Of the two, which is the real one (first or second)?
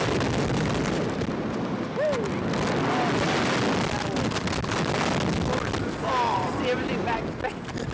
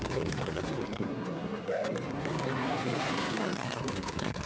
first